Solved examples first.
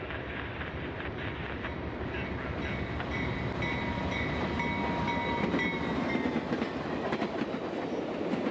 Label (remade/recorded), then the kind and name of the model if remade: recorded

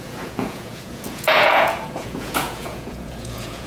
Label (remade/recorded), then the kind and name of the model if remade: remade, vocoder, Vocos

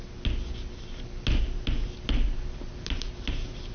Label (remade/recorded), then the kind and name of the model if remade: recorded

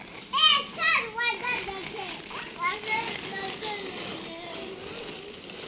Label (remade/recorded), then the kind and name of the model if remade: recorded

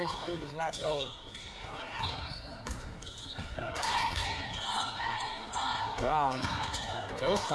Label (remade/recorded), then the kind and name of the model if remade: remade, codec, SNAC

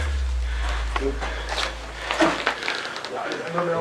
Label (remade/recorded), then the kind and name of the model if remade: recorded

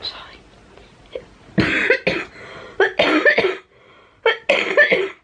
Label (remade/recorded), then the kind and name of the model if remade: recorded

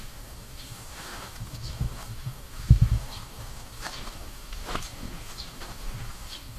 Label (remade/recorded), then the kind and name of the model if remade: remade, codec, DAC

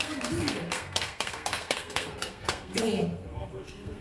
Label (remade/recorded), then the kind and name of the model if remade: remade, codec, SNAC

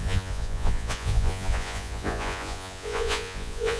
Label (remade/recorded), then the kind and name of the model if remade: remade, vocoder, Vocos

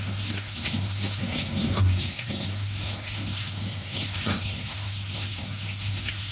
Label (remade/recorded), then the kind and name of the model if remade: remade, codec, SNAC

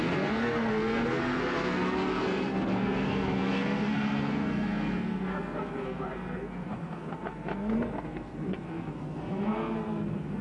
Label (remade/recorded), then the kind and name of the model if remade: remade, codec, SNAC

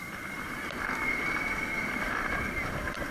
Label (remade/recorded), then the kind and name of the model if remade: remade, vocoder, BigVGAN v2